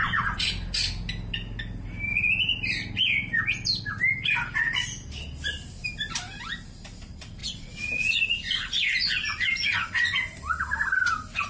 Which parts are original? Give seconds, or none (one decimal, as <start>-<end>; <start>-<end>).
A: 0.5-7.4; 8.2-11.5